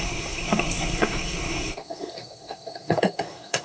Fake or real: fake